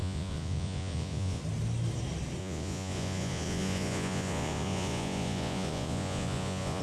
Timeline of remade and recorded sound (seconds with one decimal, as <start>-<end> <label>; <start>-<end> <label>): 0.0-1.4 remade; 1.4-2.4 recorded; 2.4-6.8 remade